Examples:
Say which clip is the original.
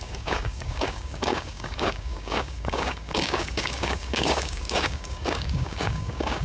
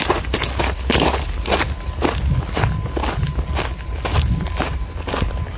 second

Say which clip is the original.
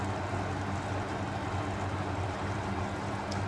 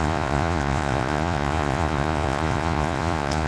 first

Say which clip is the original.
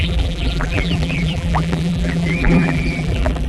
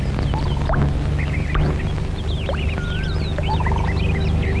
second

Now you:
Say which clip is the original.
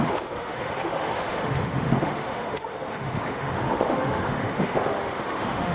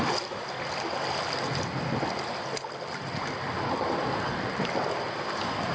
second